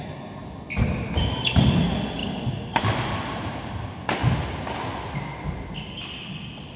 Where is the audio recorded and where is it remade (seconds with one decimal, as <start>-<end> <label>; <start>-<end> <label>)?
0.0-6.8 recorded

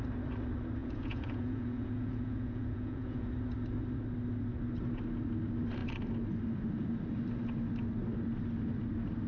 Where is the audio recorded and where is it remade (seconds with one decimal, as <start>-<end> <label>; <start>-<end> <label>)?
0.0-0.8 recorded; 0.8-3.3 remade; 3.3-9.3 recorded

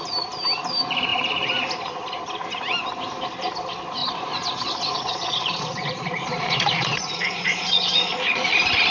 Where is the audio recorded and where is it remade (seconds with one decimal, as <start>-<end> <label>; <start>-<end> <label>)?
0.0-4.0 recorded; 4.0-8.2 remade; 8.2-8.9 recorded

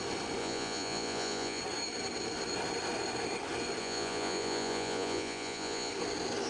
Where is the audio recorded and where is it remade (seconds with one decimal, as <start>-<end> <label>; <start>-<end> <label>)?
0.0-0.4 recorded; 0.4-1.6 remade; 1.6-3.8 recorded; 3.8-5.9 remade; 5.9-6.5 recorded

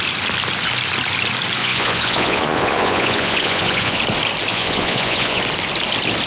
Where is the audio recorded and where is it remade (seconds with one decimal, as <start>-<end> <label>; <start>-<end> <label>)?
0.0-1.6 recorded; 1.6-4.0 remade; 4.0-4.5 recorded; 4.5-5.4 remade; 5.4-6.3 recorded

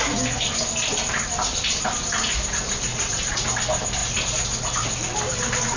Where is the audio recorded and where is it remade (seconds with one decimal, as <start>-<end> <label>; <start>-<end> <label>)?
0.0-2.9 recorded; 2.9-3.4 remade; 3.4-5.8 recorded

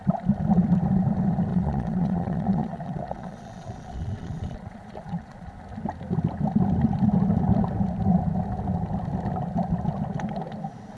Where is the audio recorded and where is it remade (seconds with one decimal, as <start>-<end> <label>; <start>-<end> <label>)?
0.0-1.5 recorded; 1.5-5.5 remade; 5.5-11.0 recorded